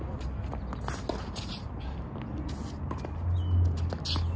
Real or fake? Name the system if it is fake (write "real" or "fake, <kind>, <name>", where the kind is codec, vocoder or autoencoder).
real